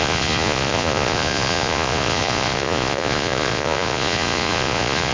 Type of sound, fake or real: fake